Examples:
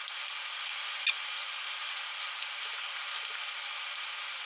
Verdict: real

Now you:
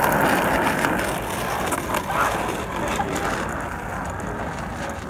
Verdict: real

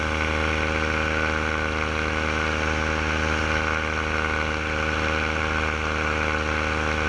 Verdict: real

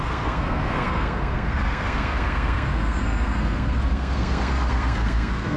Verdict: fake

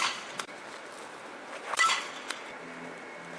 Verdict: real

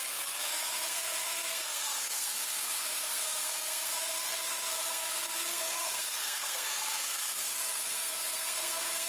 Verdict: fake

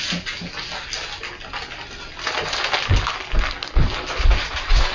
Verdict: real